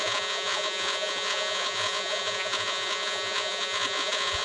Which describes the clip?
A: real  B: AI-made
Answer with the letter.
B